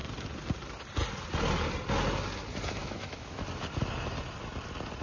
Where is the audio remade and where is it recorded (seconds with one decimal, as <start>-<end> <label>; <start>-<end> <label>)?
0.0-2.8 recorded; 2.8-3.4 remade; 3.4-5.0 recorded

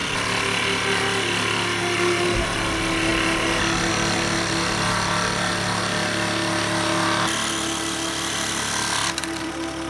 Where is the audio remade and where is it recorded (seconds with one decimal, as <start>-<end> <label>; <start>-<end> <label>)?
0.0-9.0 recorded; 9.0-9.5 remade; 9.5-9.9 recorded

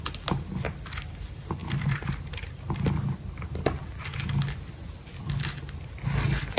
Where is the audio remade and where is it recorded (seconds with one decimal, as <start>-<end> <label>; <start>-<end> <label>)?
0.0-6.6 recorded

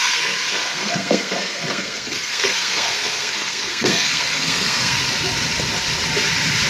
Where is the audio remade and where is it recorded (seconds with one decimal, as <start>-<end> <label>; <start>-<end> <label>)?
0.0-5.0 remade; 5.0-6.7 recorded

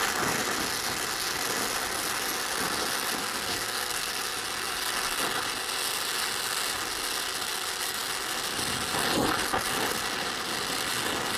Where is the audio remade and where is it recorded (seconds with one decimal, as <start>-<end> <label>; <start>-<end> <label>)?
0.0-3.2 recorded; 3.2-4.1 remade; 4.1-11.4 recorded

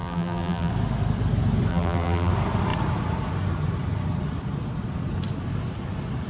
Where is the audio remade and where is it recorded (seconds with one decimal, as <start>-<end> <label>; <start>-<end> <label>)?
0.0-0.7 remade; 0.7-1.7 recorded; 1.7-2.3 remade; 2.3-6.3 recorded